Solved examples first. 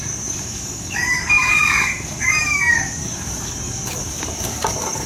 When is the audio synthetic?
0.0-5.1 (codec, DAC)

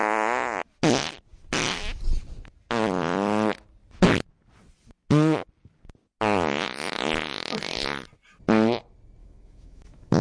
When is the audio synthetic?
9.2-10.2 (autoencoder, DAC-VAE)

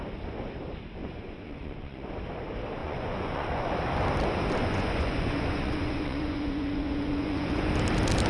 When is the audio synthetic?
1.0-2.1 (vocoder, Vocos); 2.8-3.7; 4.6-7.7

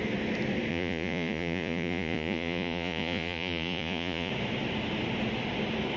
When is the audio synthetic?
0.7-4.3 (vocoder, Vocos)